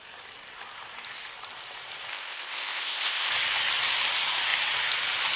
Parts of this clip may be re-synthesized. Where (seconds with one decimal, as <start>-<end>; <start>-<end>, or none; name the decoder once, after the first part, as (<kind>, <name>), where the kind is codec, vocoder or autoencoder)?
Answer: 2.1-3.3 (codec, ZipCodec)